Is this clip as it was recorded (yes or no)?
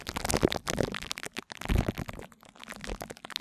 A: yes